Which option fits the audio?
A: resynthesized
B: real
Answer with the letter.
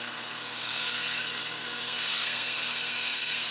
A